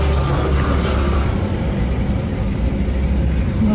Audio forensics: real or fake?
real